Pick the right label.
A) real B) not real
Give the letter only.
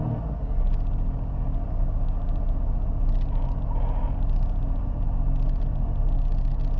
A